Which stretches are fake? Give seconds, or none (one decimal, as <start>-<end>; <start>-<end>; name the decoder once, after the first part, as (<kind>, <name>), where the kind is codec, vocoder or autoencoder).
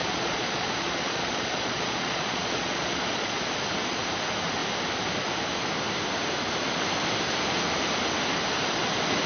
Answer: 0.0-3.5 (vocoder, Vocos)